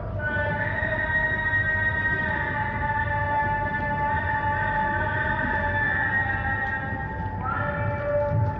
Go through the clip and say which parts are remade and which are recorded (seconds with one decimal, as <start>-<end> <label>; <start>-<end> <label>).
0.0-8.6 recorded